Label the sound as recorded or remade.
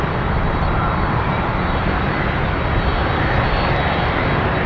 recorded